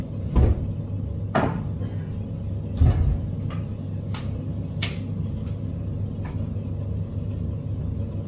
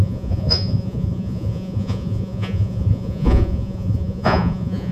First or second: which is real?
first